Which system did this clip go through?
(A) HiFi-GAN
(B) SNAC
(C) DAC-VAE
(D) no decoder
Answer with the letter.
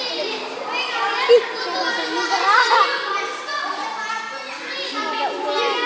D